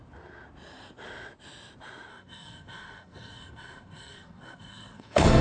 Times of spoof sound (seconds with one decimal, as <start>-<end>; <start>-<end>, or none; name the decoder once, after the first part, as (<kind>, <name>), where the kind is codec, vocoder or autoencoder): 2.1-5.4 (codec, SNAC)